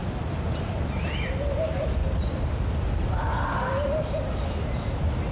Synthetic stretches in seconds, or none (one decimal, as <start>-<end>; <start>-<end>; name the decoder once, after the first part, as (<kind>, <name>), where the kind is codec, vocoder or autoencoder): none